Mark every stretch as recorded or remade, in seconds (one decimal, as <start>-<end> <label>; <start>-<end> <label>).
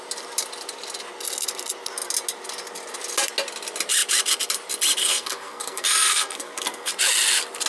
0.0-5.0 recorded; 5.0-6.9 remade; 6.9-7.7 recorded